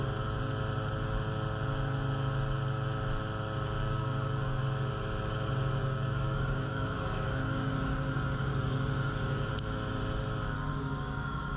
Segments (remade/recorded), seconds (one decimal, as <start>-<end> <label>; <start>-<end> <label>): 0.0-3.8 recorded; 3.8-4.6 remade; 4.6-5.8 recorded; 5.8-9.5 remade; 9.5-10.7 recorded; 10.7-11.6 remade